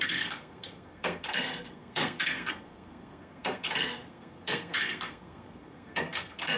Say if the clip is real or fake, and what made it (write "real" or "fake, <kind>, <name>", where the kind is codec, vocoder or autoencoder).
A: fake, codec, SNAC